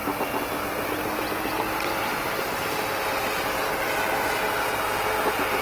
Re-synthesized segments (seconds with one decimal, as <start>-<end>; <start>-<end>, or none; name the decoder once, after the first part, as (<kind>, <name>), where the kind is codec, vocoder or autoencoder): none